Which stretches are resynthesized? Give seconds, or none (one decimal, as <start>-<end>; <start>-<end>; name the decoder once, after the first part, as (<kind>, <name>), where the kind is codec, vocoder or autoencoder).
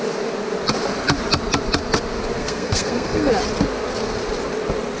2.4-3.3 (codec, SNAC)